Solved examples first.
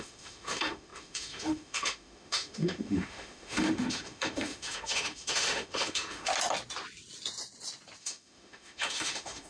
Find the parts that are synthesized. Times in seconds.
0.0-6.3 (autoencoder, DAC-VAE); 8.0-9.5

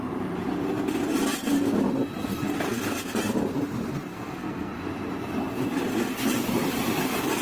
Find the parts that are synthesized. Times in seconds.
4.1-4.7 (codec, SNAC)

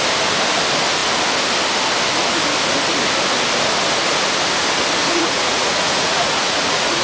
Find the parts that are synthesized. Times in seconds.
5.0-7.0 (vocoder, Vocos)

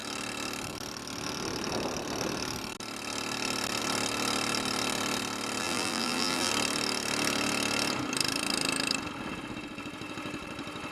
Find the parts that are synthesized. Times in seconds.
5.6-6.5 (vocoder, BigVGAN v2)

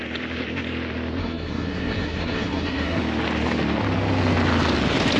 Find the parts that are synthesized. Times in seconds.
1.2-3.0 (codec, SNAC)